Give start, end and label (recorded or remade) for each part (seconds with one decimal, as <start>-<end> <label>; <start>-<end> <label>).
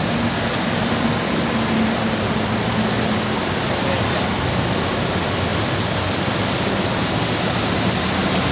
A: 0.0-8.5 recorded